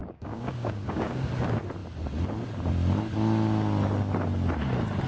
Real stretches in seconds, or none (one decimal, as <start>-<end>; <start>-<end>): 1.3-5.1